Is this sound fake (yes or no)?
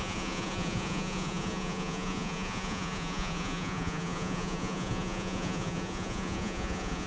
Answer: yes